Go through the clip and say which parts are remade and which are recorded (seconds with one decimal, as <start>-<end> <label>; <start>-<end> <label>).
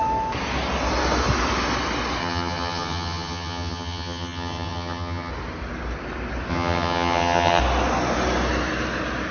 0.0-2.2 recorded; 2.2-5.3 remade; 5.3-6.5 recorded; 6.5-7.6 remade; 7.6-9.3 recorded